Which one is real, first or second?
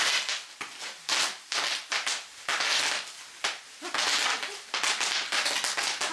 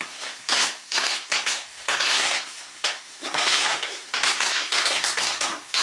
first